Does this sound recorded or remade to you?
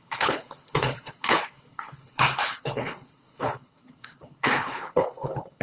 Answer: remade